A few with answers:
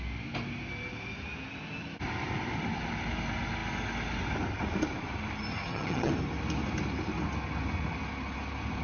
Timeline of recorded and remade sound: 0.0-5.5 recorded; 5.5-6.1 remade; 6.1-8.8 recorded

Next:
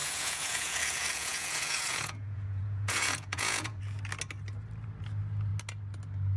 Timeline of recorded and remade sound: 0.0-3.8 remade; 3.8-6.4 recorded

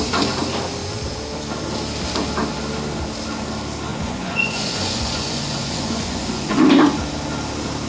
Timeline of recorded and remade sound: 0.0-3.9 recorded; 3.9-6.6 remade; 6.6-7.9 recorded

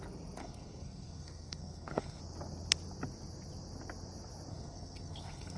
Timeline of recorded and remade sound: 0.0-0.4 recorded; 0.4-2.2 remade; 2.2-4.5 recorded; 4.5-5.6 remade

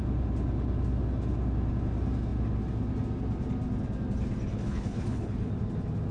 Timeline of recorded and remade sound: 0.0-4.5 recorded; 4.5-5.5 remade; 5.5-6.1 recorded

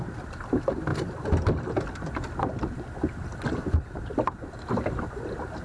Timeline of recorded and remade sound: 0.0-5.6 recorded

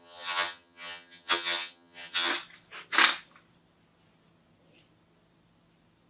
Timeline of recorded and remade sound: 0.0-2.3 remade; 2.3-6.1 recorded

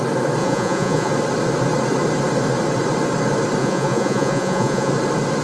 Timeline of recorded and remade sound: 0.0-0.4 recorded; 0.4-1.1 remade; 1.1-3.6 recorded; 3.6-4.9 remade; 4.9-5.4 recorded